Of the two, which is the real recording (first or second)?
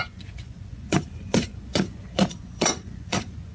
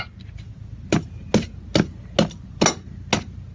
second